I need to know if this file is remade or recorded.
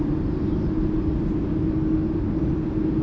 recorded